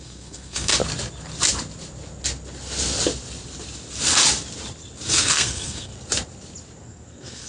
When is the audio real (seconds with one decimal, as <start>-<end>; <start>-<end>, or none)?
0.7-5.1; 5.9-6.8